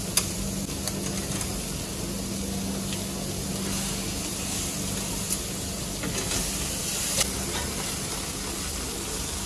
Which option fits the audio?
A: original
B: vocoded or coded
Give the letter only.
A